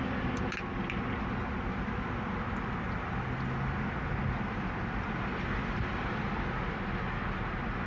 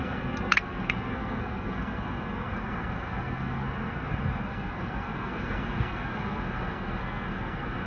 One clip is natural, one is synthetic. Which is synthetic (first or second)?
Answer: second